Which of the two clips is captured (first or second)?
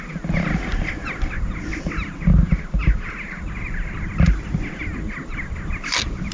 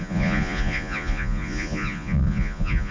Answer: first